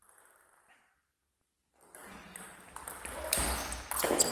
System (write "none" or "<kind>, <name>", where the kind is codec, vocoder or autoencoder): none